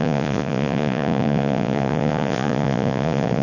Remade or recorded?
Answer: remade